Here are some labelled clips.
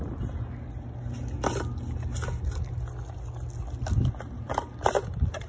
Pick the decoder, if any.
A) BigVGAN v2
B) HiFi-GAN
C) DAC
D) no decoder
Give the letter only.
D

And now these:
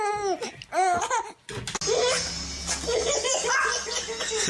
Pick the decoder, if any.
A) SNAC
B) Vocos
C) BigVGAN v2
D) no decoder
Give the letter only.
D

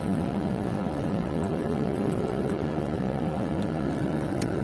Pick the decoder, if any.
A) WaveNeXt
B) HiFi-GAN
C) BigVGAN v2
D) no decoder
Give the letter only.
A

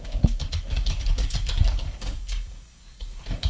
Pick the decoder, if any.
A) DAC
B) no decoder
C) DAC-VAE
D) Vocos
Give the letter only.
A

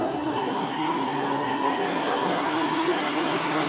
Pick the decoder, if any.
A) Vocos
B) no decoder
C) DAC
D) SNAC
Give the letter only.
D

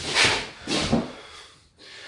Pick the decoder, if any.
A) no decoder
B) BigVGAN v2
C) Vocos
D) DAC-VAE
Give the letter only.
A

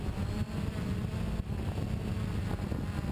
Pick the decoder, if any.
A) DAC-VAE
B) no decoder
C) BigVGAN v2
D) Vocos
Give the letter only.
B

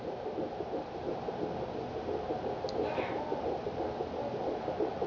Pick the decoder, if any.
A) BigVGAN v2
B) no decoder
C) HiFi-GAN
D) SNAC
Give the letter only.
B